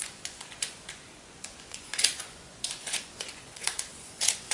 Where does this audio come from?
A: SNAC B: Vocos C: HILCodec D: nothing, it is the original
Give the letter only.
B